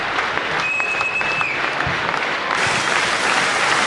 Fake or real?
real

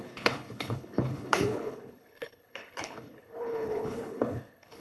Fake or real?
fake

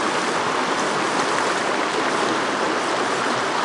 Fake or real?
real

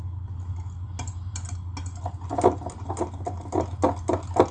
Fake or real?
real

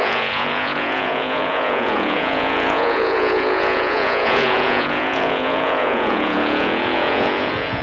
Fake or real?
fake